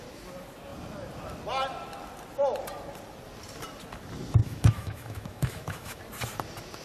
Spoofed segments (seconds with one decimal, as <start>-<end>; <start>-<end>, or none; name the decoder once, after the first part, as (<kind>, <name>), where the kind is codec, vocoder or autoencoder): 4.4-6.0 (autoencoder, DAC-VAE)